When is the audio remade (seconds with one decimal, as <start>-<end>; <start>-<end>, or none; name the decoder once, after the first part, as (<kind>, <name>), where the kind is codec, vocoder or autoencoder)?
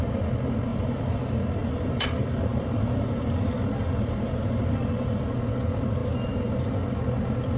0.7-1.2 (vocoder, BigVGAN v2); 1.6-5.2